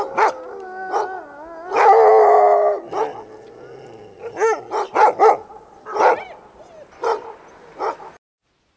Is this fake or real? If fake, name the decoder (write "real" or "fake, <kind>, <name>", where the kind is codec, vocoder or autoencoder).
real